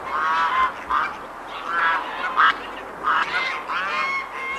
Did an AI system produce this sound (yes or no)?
no